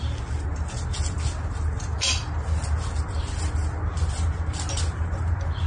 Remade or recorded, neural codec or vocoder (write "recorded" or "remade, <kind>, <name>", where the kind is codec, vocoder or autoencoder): recorded